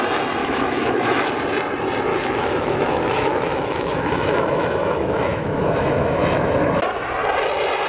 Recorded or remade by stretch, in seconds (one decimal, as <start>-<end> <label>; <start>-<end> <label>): 0.0-0.4 recorded; 0.4-1.3 remade; 1.3-2.1 recorded; 2.1-6.8 remade; 6.8-7.9 recorded